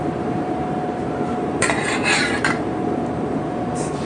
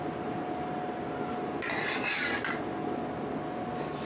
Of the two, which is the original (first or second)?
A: second